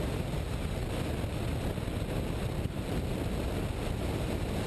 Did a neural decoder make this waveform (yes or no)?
no